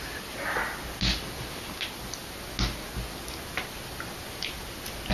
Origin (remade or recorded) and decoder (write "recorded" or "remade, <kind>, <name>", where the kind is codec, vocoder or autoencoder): recorded